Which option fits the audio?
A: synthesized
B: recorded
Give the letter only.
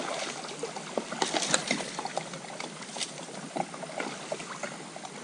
B